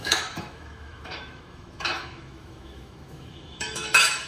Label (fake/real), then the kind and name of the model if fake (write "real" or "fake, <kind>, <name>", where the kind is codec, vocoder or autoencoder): fake, autoencoder, DAC-VAE